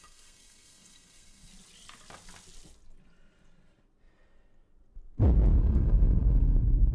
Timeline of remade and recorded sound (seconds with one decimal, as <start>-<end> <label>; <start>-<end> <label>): 0.0-1.5 remade; 1.5-5.6 recorded; 5.6-6.9 remade